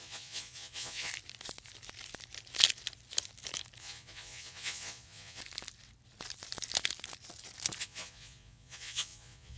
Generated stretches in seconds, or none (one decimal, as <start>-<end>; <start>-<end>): 0.0-1.1; 3.8-5.4; 7.8-9.6